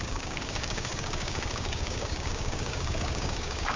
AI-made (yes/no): yes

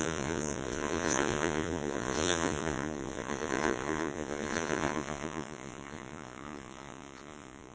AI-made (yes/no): yes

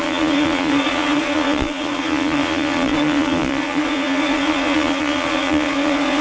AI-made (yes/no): yes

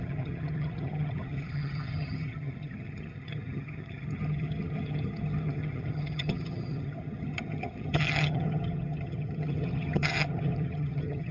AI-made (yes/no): yes